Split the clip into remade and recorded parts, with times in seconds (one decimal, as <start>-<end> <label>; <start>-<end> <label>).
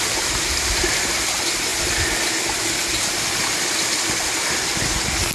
0.0-5.3 recorded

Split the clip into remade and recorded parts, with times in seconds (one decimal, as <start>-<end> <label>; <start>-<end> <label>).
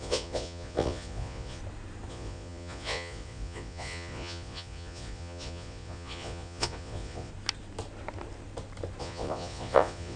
0.0-1.6 remade; 1.6-2.1 recorded; 2.1-7.3 remade; 7.3-9.0 recorded; 9.0-10.2 remade